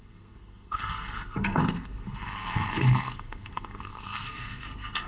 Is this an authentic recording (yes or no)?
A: no